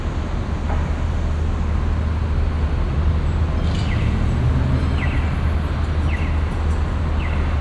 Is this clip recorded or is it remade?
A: recorded